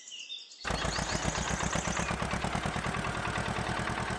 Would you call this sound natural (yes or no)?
yes